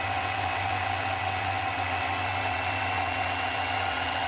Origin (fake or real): fake